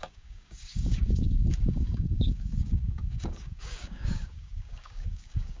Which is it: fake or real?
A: fake